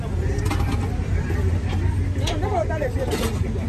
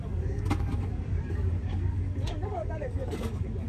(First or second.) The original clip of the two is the first